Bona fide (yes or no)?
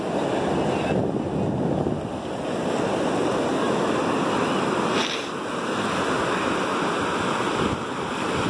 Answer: yes